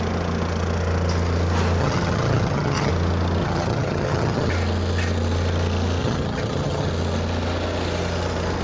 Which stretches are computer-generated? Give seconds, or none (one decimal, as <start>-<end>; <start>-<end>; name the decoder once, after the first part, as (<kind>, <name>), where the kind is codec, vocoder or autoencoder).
1.8-2.9 (vocoder, HiFi-GAN); 3.4-4.5; 6.0-6.9